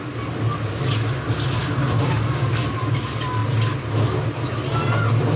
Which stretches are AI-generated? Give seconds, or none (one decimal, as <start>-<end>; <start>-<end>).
1.6-2.5